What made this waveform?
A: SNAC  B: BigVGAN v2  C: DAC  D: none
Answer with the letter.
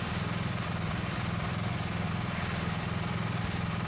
B